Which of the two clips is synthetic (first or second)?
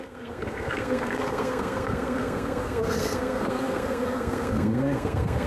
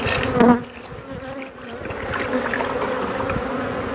first